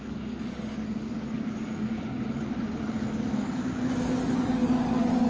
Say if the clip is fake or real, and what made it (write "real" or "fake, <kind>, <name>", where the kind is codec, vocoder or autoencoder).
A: fake, codec, DAC